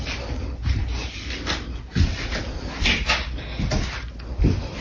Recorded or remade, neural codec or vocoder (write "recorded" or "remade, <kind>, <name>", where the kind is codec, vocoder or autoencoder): recorded